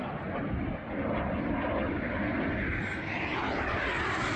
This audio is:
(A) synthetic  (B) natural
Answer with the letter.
B